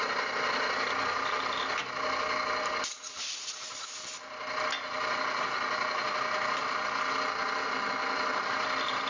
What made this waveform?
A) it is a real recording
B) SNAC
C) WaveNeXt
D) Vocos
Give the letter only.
A